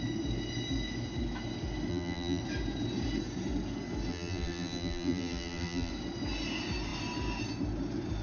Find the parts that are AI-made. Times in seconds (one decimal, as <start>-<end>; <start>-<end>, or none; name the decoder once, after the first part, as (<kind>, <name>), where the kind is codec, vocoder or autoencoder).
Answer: 1.9-2.4 (vocoder, BigVGAN v2); 4.1-5.9